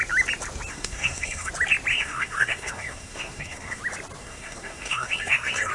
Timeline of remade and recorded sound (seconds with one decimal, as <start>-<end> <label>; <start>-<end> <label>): 0.0-0.7 recorded; 0.7-1.5 remade; 1.5-1.9 recorded; 1.9-3.8 remade; 3.8-4.2 recorded; 4.2-5.7 remade